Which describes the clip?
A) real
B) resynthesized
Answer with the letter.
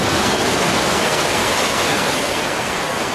B